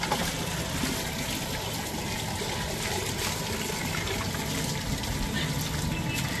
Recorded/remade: recorded